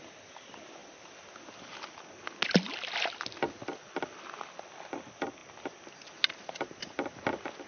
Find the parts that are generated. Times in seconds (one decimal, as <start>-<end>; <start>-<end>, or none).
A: none